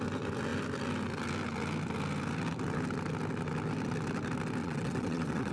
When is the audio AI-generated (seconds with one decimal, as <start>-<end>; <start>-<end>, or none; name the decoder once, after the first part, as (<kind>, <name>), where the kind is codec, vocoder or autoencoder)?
4.6-5.5 (vocoder, WaveNeXt)